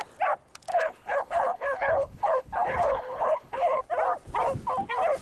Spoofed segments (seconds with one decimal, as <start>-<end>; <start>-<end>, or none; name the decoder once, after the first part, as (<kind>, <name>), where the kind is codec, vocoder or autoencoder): 0.7-3.8 (codec, HILCodec)